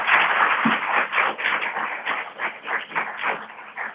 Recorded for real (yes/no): yes